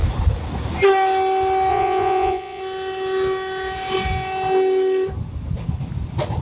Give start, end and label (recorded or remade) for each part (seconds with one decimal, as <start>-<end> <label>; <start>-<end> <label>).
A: 0.0-1.7 recorded; 1.7-2.6 remade; 2.6-6.4 recorded

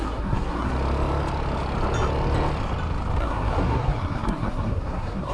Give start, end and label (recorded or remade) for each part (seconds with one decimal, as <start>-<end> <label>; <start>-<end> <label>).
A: 0.0-0.7 remade; 0.7-3.2 recorded; 3.2-5.3 remade

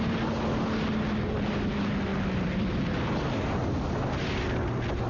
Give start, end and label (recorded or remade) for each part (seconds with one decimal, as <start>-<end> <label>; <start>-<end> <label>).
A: 0.0-5.1 recorded

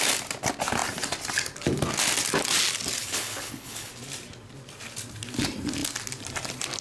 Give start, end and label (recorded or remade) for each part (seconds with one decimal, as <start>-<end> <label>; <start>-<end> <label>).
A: 0.0-3.0 recorded; 3.0-3.9 remade; 3.9-6.8 recorded

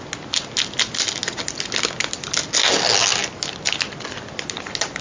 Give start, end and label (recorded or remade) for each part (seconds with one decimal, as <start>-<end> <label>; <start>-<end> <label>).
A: 0.0-5.0 recorded

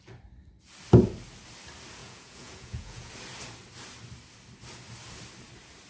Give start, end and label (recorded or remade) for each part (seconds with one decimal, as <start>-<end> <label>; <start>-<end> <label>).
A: 0.0-2.0 recorded; 2.0-3.1 remade; 3.1-5.9 recorded

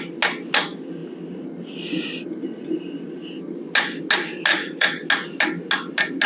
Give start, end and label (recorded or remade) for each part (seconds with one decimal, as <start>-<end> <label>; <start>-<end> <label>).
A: 0.0-4.5 recorded; 4.5-5.1 remade; 5.1-6.3 recorded

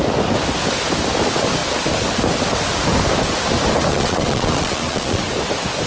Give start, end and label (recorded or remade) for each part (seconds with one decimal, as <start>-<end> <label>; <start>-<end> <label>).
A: 0.0-3.9 recorded; 3.9-5.2 remade; 5.2-5.9 recorded